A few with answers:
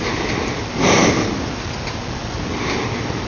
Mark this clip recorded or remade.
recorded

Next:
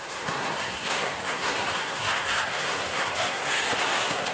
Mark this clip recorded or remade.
remade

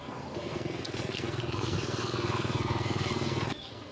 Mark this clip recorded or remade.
remade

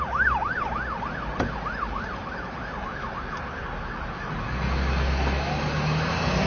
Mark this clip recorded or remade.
recorded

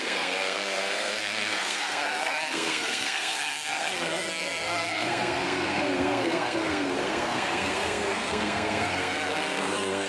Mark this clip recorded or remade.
remade